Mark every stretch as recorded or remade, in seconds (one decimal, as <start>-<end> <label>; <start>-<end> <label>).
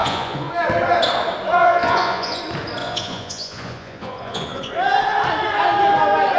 0.0-0.5 remade; 0.5-1.6 recorded; 1.6-2.4 remade; 2.4-2.8 recorded; 2.8-4.7 remade; 4.7-6.4 recorded